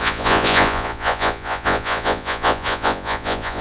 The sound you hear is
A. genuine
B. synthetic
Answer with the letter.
B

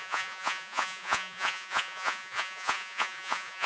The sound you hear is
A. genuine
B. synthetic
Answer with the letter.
B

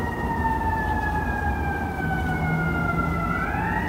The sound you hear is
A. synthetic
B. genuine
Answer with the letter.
B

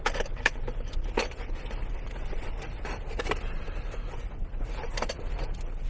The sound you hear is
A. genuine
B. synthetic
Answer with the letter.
A